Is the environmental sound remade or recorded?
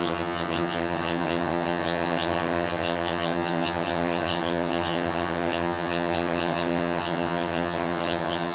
remade